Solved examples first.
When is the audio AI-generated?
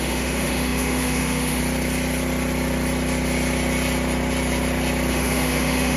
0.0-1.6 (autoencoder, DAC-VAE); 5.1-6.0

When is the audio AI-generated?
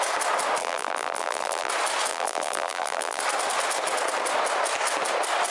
0.6-1.7 (vocoder, BigVGAN v2); 2.1-3.2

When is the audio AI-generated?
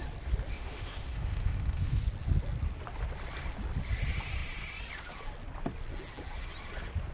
0.5-2.0 (autoencoder, DAC-VAE)